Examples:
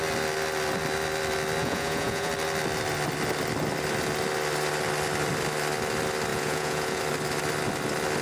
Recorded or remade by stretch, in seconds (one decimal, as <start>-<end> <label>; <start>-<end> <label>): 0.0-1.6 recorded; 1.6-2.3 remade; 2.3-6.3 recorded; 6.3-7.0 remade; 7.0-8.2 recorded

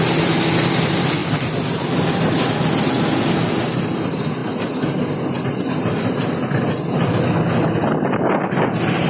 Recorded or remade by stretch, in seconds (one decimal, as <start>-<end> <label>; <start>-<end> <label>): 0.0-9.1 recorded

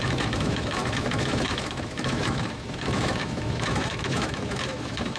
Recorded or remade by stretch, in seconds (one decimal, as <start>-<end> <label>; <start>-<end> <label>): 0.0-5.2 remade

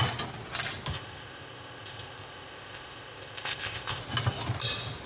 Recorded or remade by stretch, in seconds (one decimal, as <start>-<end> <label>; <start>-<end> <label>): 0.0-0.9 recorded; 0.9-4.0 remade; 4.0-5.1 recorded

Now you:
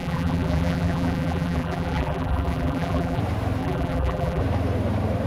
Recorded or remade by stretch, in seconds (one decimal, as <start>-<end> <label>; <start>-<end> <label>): 0.0-3.2 remade; 3.2-3.6 recorded; 3.6-4.4 remade; 4.4-5.3 recorded

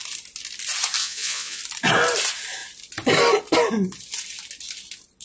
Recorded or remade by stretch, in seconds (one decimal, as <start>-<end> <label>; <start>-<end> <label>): 0.0-1.0 recorded; 1.0-1.6 remade; 1.6-5.2 recorded

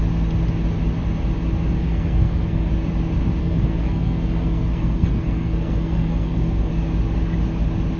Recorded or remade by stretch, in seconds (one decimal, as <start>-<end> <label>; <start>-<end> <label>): 0.0-1.8 recorded; 1.8-2.7 remade; 2.7-3.4 recorded; 3.4-6.7 remade; 6.7-8.0 recorded